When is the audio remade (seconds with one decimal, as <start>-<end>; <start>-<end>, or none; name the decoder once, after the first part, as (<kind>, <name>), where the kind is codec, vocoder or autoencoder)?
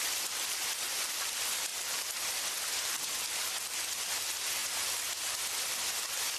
none